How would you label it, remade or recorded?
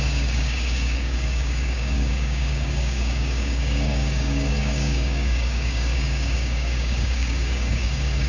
remade